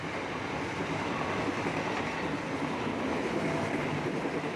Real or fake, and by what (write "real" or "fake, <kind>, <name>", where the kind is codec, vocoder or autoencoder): real